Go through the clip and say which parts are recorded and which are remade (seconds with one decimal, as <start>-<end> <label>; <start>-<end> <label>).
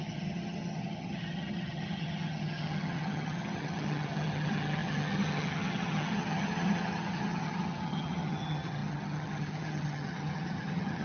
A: 0.0-11.0 remade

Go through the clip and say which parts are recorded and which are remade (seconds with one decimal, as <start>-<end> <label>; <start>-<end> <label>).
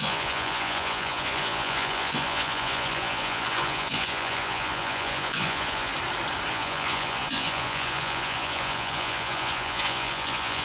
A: 0.0-5.9 remade; 5.9-6.5 recorded; 6.5-10.6 remade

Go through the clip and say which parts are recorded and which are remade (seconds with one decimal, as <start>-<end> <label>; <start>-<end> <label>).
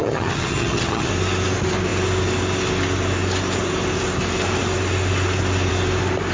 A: 0.0-1.1 remade; 1.1-6.3 recorded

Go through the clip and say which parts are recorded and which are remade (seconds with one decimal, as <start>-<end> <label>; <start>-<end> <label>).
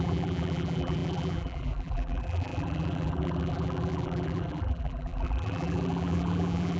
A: 0.0-6.8 remade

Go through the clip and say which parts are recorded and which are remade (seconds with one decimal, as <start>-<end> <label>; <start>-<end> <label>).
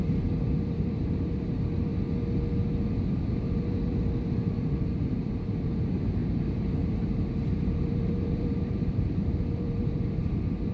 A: 0.0-1.9 remade; 1.9-3.1 recorded; 3.1-10.7 remade